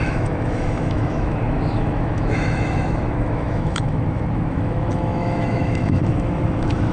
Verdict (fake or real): fake